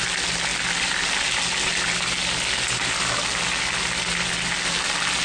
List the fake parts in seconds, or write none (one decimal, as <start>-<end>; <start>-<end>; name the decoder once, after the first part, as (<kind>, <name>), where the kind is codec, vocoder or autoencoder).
none